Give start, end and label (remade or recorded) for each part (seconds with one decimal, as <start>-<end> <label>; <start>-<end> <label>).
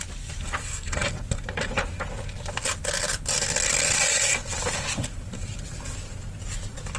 0.0-0.6 recorded; 0.6-1.1 remade; 1.1-7.0 recorded